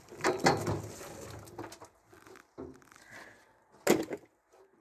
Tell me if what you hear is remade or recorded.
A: recorded